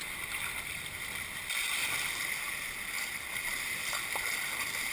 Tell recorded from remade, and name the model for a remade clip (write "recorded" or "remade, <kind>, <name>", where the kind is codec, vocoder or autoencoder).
recorded